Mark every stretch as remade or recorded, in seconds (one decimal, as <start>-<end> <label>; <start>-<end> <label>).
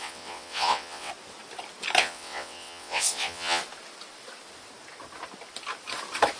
0.0-1.1 remade; 1.1-2.0 recorded; 2.0-3.6 remade; 3.6-6.4 recorded